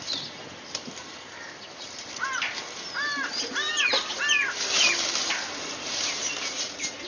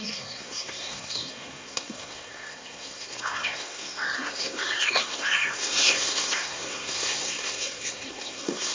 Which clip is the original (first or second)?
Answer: first